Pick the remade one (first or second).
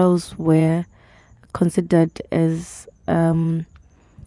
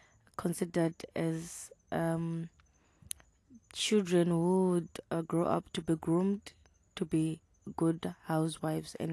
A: first